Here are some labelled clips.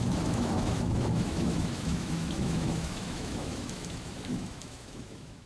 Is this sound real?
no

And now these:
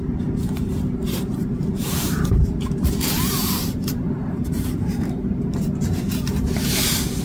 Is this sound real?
no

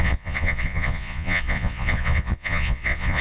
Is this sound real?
no